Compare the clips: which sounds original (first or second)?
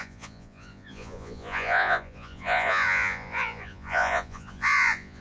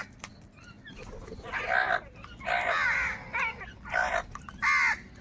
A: second